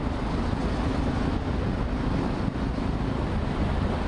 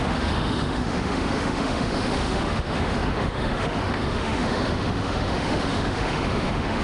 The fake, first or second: second